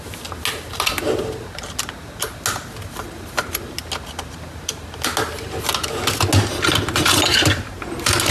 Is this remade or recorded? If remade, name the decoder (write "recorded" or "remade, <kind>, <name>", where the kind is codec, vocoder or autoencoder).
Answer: recorded